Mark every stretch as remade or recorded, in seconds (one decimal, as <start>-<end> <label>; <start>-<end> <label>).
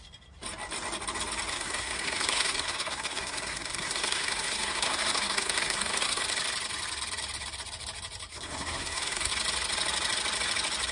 0.0-1.5 recorded; 1.5-6.2 remade; 6.2-8.3 recorded; 8.3-9.3 remade; 9.3-10.9 recorded